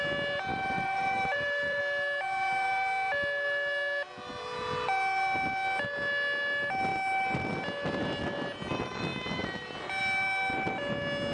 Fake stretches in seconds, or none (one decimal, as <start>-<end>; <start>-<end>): 0.5-1.8